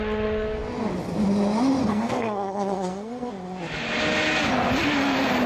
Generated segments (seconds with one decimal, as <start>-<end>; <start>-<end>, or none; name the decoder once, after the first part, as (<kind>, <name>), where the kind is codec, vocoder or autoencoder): 1.8-3.3 (codec, SNAC)